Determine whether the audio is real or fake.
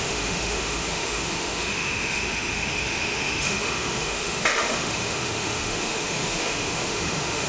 fake